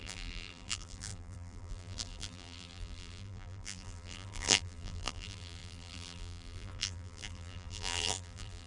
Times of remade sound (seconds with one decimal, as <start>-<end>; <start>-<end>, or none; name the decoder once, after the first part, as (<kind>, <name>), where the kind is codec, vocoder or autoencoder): 0.0-8.7 (vocoder, BigVGAN v2)